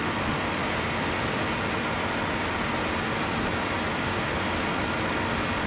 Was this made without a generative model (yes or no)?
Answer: yes